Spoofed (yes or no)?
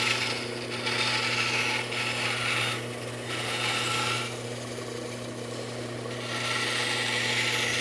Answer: yes